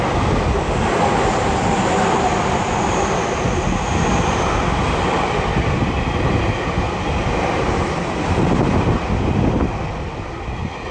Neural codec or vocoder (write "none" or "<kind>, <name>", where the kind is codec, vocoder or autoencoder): none